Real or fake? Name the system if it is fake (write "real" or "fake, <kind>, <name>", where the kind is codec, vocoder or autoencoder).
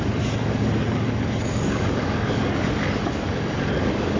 fake, codec, DAC